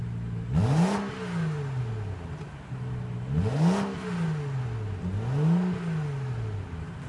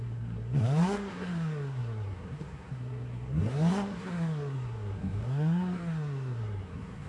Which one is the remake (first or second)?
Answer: second